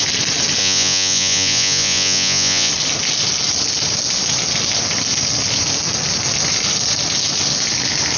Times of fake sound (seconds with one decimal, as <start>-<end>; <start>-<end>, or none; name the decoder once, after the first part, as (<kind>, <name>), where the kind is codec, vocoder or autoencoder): 0.6-2.7 (vocoder, Vocos)